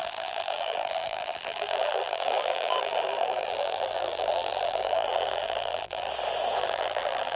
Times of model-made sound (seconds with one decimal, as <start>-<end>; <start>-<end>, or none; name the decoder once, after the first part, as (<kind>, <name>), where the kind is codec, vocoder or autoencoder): 0.0-6.1 (vocoder, BigVGAN v2); 6.6-7.4